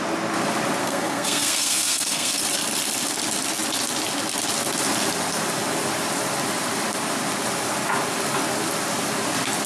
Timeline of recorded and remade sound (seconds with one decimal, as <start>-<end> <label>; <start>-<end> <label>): 0.0-0.8 recorded; 0.8-2.4 remade; 2.4-9.7 recorded